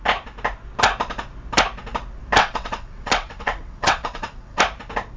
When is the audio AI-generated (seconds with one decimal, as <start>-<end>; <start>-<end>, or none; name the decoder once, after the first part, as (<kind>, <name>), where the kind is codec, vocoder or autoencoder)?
2.4-4.6 (vocoder, WaveNeXt)